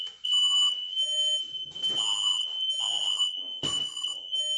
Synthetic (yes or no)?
no